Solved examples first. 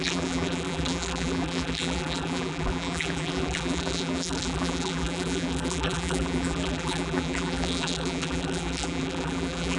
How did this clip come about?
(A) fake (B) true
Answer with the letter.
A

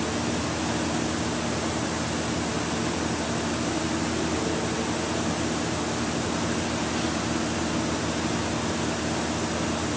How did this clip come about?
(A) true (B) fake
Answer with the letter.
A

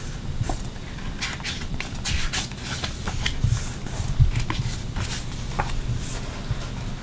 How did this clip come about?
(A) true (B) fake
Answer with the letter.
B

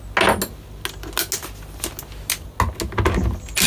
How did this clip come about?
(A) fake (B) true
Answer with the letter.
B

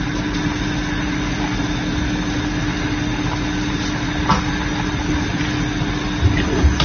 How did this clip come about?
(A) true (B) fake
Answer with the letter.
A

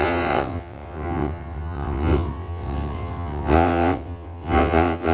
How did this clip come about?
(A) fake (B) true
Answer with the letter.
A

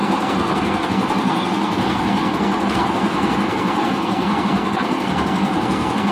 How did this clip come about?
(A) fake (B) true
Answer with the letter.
A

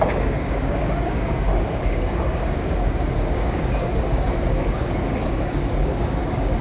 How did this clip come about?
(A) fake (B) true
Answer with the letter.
A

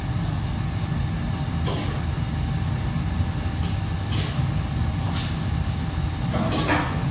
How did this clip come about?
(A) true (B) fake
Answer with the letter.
A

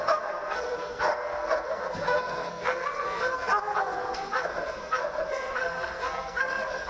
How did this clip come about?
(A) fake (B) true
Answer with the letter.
A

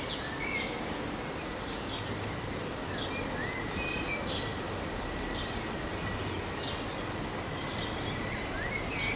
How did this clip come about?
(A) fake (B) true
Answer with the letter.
B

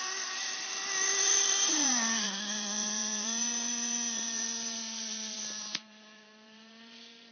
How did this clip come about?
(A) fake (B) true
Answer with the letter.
A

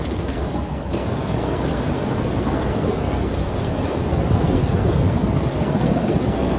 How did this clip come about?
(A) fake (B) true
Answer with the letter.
A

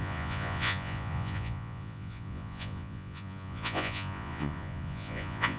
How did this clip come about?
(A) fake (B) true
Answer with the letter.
A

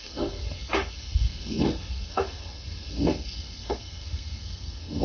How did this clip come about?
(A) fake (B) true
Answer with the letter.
A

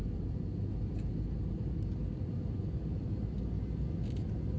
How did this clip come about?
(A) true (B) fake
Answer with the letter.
A